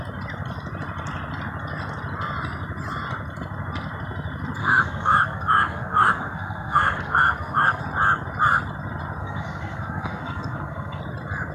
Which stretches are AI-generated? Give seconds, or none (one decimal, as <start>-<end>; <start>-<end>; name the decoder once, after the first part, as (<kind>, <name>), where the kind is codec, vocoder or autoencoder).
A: 4.6-7.8 (codec, SNAC); 9.2-11.0